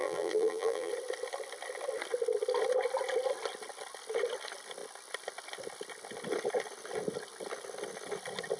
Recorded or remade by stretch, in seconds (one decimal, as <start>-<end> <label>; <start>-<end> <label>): 0.0-0.9 remade; 0.9-8.6 recorded